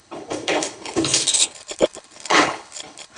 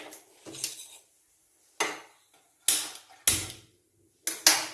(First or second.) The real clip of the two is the second